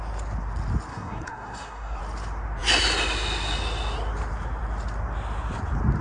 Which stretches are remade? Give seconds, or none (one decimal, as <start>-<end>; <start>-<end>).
0.9-2.0